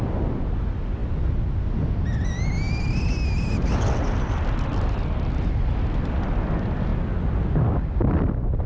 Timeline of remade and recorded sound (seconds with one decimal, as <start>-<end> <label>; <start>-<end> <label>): 0.0-8.7 recorded